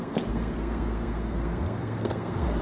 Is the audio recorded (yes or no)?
no